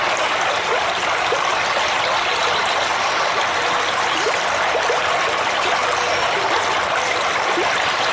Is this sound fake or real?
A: real